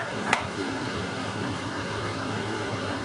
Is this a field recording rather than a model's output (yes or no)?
no